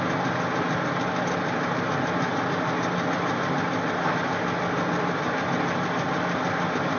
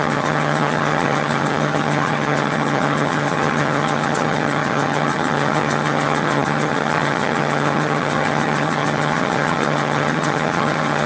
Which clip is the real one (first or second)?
first